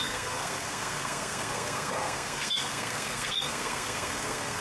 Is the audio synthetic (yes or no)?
yes